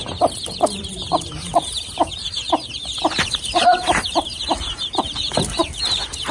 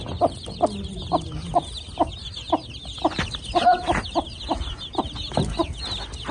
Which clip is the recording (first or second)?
second